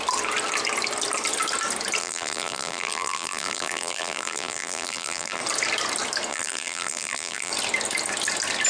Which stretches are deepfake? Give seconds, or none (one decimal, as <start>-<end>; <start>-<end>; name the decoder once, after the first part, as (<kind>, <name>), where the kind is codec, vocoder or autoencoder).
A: 2.0-5.4 (vocoder, BigVGAN v2); 6.3-7.5